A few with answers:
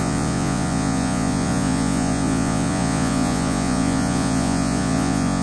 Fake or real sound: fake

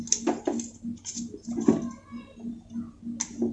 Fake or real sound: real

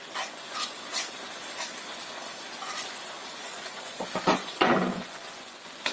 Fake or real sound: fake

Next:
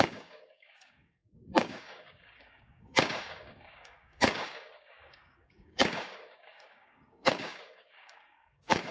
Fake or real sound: fake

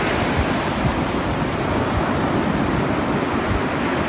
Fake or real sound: real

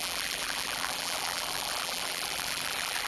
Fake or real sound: fake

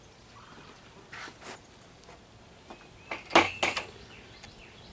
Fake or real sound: real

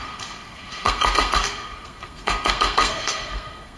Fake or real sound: fake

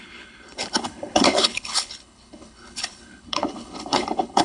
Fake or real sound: fake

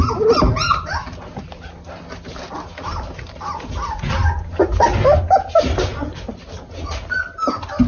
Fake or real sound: real